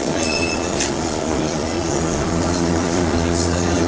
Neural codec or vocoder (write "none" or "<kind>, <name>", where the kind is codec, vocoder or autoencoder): vocoder, Vocos